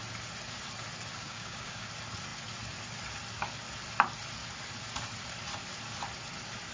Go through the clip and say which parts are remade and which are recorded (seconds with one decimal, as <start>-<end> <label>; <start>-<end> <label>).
0.0-1.1 recorded; 1.1-1.9 remade; 1.9-6.7 recorded